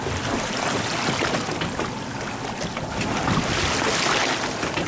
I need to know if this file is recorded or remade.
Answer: recorded